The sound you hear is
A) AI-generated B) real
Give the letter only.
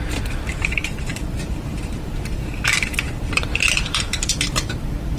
A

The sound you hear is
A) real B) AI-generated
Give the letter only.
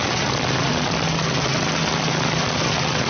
A